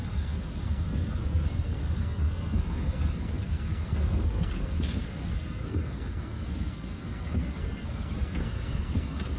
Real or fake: fake